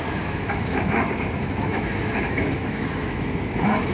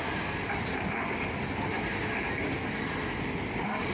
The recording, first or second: second